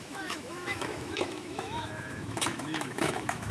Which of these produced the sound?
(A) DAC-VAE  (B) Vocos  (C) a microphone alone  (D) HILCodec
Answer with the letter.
A